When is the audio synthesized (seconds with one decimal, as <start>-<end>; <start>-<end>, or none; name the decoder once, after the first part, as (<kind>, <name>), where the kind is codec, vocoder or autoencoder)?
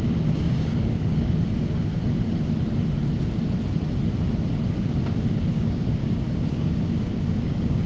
0.0-1.9 (codec, DAC); 4.7-7.9